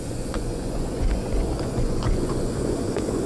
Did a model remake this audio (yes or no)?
yes